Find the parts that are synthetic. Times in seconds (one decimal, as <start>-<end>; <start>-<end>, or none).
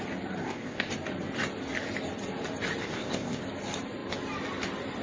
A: 0.4-0.9; 2.8-3.4